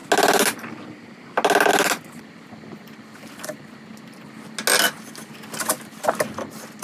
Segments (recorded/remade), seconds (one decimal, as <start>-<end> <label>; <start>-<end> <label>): 0.0-6.8 recorded